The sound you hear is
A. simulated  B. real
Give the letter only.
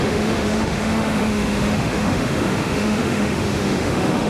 A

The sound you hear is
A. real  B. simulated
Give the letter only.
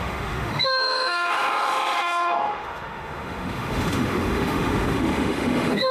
B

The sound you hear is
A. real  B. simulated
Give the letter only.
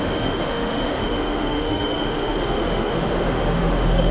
B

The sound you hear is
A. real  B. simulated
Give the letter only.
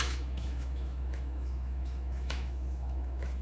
B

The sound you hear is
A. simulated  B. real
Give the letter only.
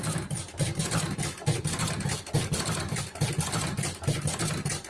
B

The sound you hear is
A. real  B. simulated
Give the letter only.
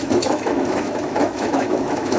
B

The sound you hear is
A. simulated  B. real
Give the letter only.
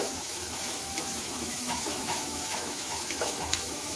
A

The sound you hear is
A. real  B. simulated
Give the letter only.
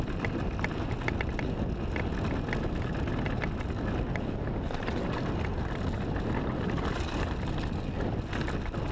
A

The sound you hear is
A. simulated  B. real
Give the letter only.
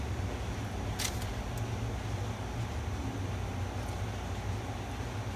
B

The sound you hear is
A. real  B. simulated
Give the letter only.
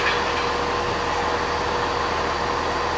A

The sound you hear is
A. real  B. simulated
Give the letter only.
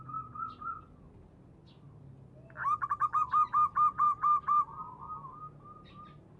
A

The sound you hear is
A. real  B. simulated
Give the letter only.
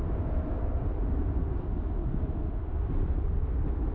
A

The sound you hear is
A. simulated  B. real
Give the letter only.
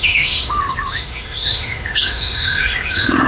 A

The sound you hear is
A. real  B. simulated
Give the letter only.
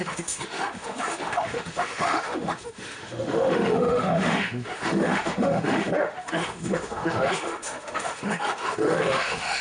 B